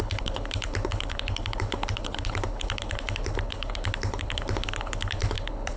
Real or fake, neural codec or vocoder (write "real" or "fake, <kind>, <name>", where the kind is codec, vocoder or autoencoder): fake, codec, HILCodec